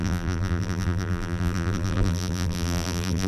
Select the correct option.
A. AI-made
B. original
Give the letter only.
A